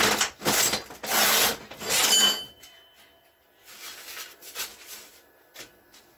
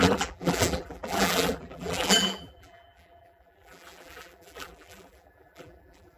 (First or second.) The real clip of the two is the first